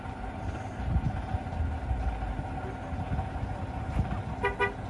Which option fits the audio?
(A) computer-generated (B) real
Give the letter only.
B